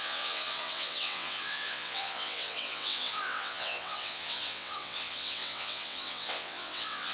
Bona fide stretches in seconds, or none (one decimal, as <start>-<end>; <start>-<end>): none